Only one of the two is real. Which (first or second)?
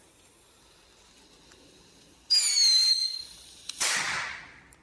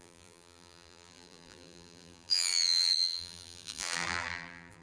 first